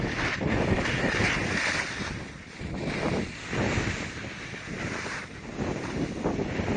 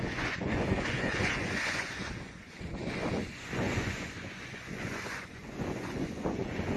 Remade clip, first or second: second